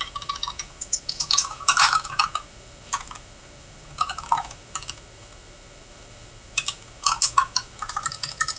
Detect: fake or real fake